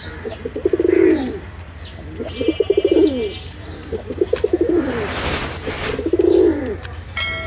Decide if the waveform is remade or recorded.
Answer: recorded